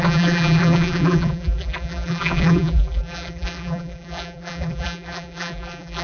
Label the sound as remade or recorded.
remade